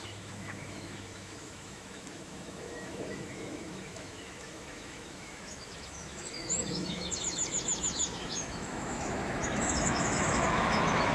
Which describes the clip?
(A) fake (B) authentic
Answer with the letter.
A